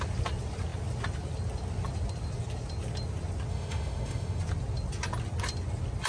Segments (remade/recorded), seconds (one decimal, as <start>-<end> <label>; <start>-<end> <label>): 0.0-3.5 recorded; 3.5-4.4 remade; 4.4-6.1 recorded